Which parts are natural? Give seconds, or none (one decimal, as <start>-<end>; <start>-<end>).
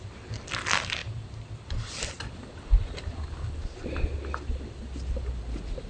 0.0-5.9